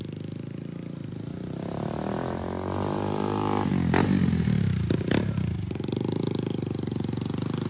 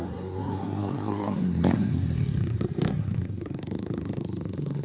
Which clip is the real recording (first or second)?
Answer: first